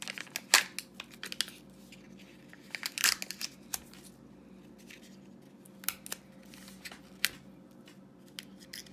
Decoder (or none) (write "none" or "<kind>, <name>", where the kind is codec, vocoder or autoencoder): none